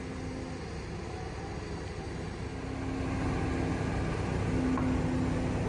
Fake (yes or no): no